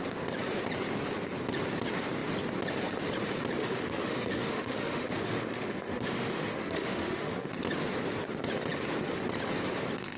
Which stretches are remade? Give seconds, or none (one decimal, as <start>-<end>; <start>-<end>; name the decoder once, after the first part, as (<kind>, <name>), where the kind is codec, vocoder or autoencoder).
3.6-7.5 (autoencoder, DAC-VAE)

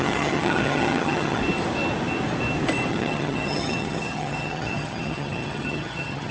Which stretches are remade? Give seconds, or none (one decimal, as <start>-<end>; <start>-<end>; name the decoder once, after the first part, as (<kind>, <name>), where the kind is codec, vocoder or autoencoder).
0.0-1.4 (vocoder, HiFi-GAN); 2.9-6.3

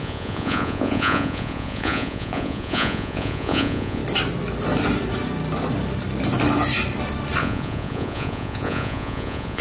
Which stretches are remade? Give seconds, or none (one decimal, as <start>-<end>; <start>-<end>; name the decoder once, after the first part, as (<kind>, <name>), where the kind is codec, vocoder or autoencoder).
0.0-4.0 (vocoder, Vocos); 7.4-9.6

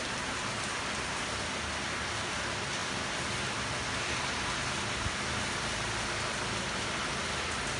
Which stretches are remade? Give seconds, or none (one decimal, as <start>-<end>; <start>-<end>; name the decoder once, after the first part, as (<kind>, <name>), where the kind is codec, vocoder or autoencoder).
none

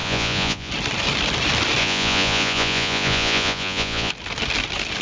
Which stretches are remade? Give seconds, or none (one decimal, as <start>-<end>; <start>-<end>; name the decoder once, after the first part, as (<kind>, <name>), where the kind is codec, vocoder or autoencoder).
0.0-0.7 (vocoder, Vocos); 1.8-4.1

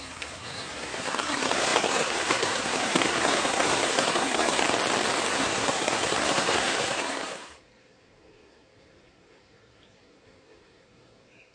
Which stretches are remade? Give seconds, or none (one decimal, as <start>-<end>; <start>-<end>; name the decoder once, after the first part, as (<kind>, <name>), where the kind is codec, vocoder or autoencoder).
0.0-4.6 (codec, SNAC); 5.3-11.5

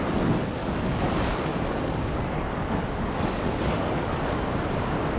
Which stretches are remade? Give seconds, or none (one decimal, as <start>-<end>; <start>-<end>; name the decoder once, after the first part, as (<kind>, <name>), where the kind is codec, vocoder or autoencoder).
0.6-1.1 (codec, DAC); 1.5-4.6

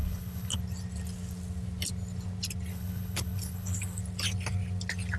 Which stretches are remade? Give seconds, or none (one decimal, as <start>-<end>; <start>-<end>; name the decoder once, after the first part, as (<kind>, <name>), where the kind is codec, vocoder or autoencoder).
0.0-0.6 (codec, HILCodec); 2.7-4.0